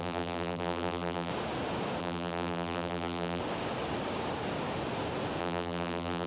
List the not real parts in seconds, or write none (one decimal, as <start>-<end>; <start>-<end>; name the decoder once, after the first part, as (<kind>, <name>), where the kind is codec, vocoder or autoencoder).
0.0-1.3 (vocoder, BigVGAN v2); 2.0-3.4; 5.4-6.3